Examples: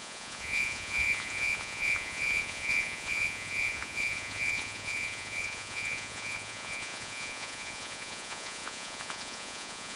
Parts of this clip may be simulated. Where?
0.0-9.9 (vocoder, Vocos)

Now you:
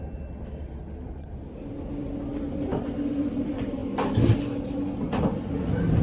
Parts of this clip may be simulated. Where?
none

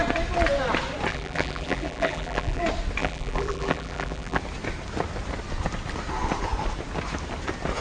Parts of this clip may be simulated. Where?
1.1-2.6 (vocoder, BigVGAN v2); 3.0-4.4